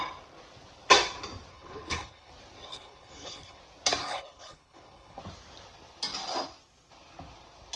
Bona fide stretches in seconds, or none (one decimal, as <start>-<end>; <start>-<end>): 0.0-1.5; 2.3-2.7; 3.6-4.0; 5.2-7.8